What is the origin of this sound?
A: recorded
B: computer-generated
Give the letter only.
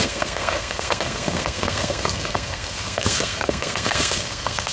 B